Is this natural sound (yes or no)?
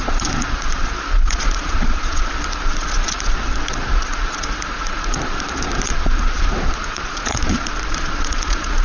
no